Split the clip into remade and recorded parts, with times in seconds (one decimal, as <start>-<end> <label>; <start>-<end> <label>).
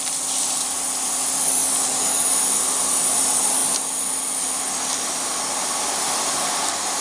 0.0-7.0 recorded